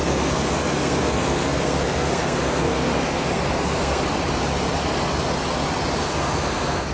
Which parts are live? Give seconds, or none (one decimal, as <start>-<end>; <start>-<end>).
4.0-6.0